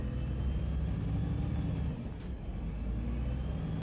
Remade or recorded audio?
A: recorded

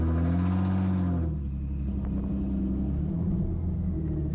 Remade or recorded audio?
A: recorded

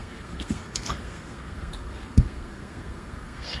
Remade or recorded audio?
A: remade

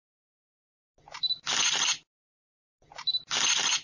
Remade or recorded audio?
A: recorded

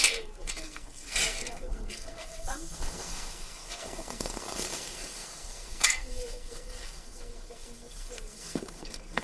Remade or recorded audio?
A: remade